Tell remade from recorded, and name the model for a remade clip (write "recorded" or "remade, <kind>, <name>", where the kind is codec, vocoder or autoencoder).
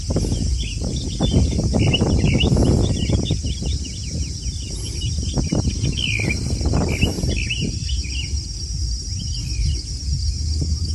recorded